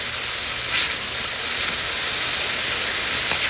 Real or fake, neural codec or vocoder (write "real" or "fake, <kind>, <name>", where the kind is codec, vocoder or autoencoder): real